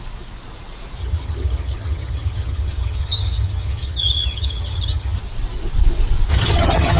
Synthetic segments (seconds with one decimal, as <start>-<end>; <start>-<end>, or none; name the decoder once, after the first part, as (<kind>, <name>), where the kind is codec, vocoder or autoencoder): 1.0-5.2 (vocoder, HiFi-GAN); 6.3-7.0